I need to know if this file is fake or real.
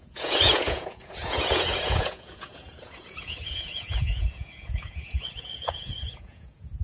fake